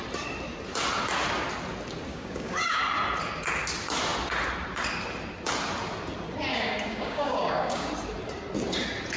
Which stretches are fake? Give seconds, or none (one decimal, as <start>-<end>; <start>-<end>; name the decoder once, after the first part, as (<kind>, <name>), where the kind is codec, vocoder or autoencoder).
2.1-2.8 (codec, DAC); 6.5-7.9